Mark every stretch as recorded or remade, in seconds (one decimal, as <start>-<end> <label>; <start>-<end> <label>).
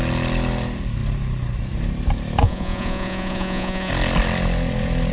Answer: 0.0-2.4 recorded; 2.4-3.9 remade; 3.9-5.1 recorded